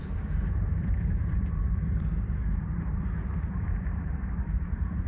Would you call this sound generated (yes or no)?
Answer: yes